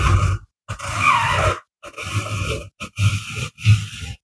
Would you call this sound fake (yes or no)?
no